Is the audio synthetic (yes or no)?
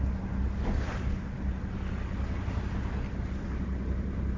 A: no